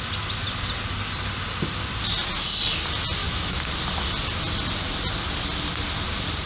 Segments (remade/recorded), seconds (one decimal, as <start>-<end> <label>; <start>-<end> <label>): 0.0-3.2 recorded; 3.2-3.7 remade; 3.7-6.5 recorded